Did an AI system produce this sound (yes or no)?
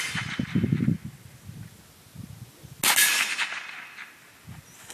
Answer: no